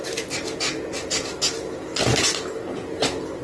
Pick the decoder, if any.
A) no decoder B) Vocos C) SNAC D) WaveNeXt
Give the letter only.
A